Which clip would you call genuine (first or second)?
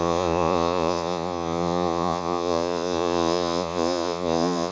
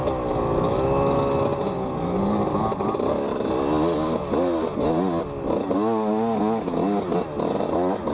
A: second